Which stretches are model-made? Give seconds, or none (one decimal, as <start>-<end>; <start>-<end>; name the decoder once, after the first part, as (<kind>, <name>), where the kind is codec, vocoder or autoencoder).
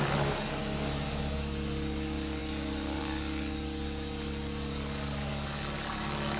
0.0-6.4 (codec, DAC)